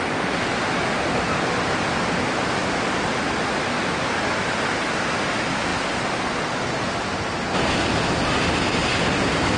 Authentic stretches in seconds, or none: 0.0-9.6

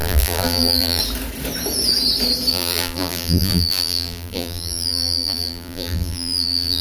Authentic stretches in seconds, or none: 1.0-2.5

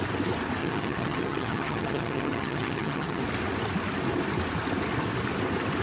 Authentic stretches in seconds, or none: 0.0-0.6; 3.2-5.8

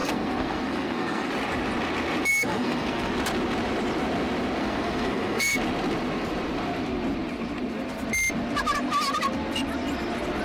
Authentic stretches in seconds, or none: 1.3-2.3; 3.1-4.6; 5.6-10.4